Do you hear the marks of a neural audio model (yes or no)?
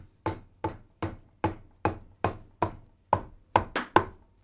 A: no